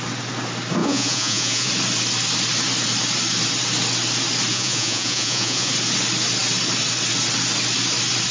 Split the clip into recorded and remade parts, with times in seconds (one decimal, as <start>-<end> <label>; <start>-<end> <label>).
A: 0.0-0.8 recorded; 0.8-1.7 remade; 1.7-4.5 recorded; 4.5-5.7 remade; 5.7-8.3 recorded